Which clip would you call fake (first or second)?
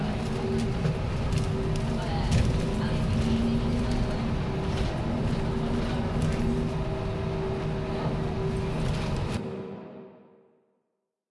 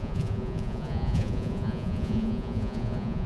second